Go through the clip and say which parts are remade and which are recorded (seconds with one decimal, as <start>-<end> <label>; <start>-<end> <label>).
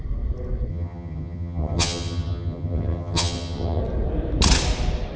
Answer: 0.0-0.7 recorded; 0.7-3.8 remade; 3.8-5.2 recorded